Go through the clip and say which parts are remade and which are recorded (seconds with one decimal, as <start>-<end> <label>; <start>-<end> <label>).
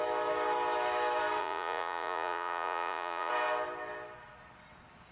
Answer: 0.0-1.4 recorded; 1.4-3.3 remade; 3.3-5.1 recorded